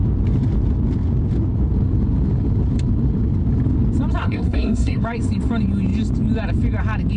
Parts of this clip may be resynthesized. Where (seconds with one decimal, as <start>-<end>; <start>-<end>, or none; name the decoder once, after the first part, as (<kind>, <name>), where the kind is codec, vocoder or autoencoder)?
4.2-5.0 (codec, SNAC)